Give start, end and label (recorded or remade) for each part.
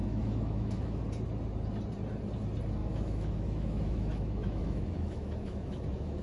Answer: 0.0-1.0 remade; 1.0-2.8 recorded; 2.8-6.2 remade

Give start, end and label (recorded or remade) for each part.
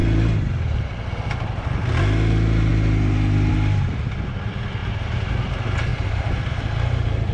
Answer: 0.0-4.8 recorded; 4.8-5.4 remade; 5.4-5.9 recorded; 5.9-6.5 remade; 6.5-7.3 recorded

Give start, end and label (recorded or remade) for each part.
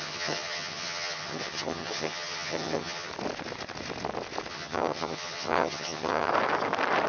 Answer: 0.0-3.1 remade; 3.1-4.5 recorded; 4.5-6.3 remade; 6.3-7.1 recorded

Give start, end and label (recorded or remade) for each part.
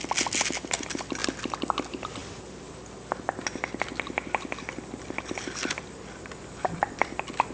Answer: 0.0-7.5 recorded